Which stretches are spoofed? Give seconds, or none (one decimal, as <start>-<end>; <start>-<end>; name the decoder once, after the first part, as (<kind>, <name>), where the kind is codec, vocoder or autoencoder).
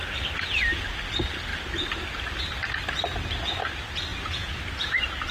4.1-4.6 (vocoder, Vocos)